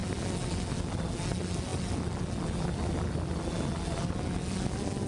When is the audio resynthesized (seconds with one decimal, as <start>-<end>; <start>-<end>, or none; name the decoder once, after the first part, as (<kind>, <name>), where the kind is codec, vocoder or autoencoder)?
none